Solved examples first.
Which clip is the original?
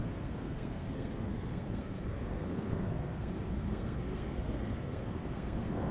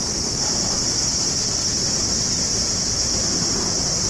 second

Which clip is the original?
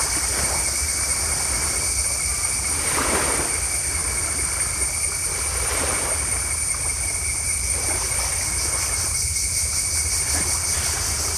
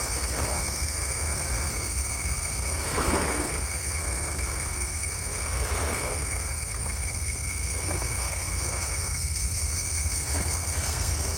first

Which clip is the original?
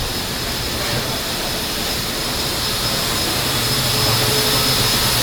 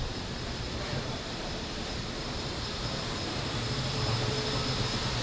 first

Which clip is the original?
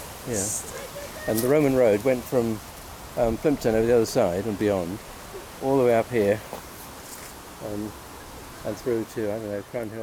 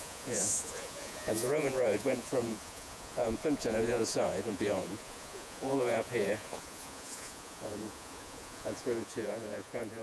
first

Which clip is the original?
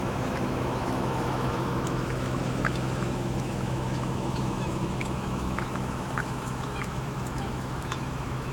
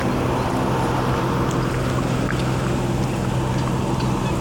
second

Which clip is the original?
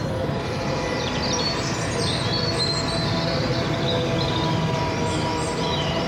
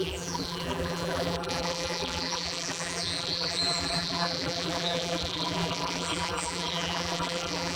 first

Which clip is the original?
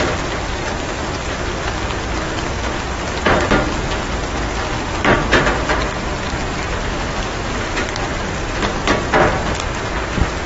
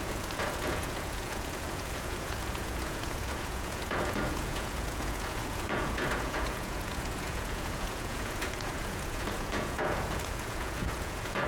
first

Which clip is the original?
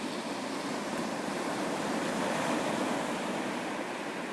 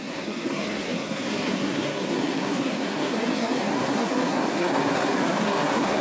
first